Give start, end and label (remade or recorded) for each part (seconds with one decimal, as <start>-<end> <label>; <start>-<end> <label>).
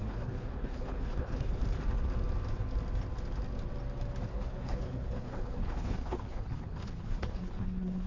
0.0-1.6 remade; 1.6-4.3 recorded; 4.3-8.1 remade